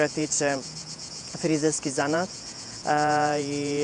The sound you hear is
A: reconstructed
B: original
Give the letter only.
A